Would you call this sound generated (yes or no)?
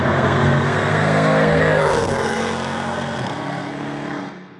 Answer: yes